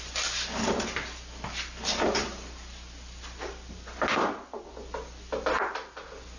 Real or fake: real